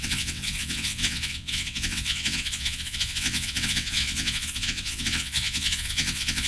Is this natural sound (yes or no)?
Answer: no